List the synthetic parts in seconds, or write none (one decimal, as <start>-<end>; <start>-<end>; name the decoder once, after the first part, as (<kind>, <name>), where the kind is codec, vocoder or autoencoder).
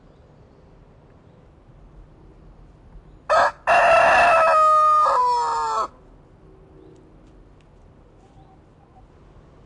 none